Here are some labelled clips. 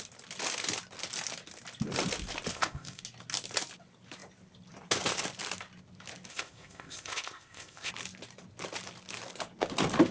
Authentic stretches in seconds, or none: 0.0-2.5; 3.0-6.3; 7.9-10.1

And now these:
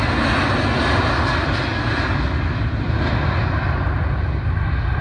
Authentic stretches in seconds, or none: 0.0-5.0

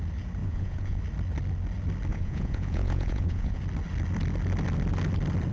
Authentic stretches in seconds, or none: 0.0-0.4; 1.0-2.1; 3.6-5.5